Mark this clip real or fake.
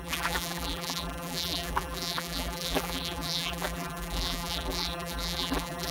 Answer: fake